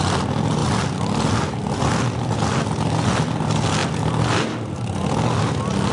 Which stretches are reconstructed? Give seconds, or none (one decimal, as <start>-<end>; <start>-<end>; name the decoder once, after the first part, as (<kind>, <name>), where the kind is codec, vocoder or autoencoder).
none